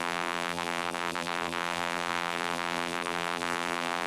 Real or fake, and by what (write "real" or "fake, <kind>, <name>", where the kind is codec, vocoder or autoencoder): fake, vocoder, BigVGAN v2